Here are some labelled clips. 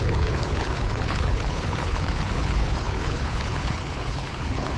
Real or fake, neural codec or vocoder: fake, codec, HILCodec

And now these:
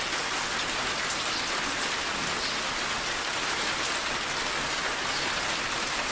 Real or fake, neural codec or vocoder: real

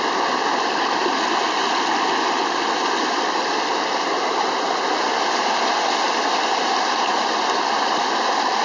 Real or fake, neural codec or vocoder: real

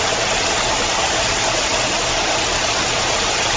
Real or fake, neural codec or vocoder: real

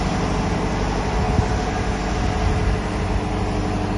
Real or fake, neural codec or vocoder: real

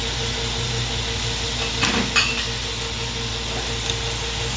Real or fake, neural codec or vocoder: real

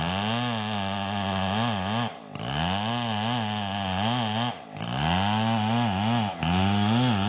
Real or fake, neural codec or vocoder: real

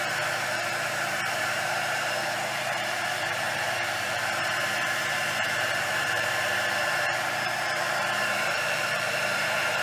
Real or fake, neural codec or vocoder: fake, vocoder, BigVGAN v2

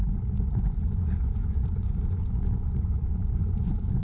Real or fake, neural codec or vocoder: fake, vocoder, Vocos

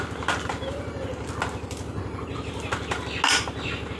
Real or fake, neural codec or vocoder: real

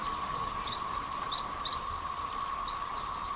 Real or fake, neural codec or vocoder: real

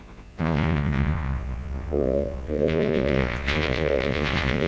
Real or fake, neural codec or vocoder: fake, vocoder, Vocos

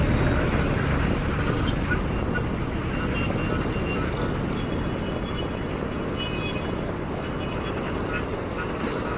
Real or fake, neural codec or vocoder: real